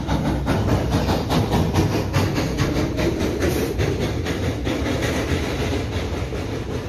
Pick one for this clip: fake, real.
real